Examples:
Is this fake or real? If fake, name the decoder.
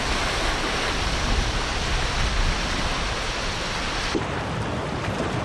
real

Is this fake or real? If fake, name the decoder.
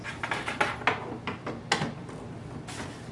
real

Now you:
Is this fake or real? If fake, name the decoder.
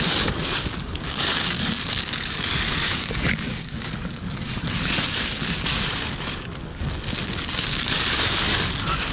fake, codec, DAC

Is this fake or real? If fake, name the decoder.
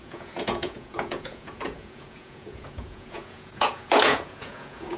fake, vocoder, Vocos